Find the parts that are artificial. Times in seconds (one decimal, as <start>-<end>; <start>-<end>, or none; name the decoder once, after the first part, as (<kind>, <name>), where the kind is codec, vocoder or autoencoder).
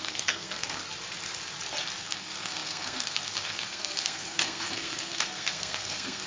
0.0-0.8 (codec, SNAC); 2.0-6.3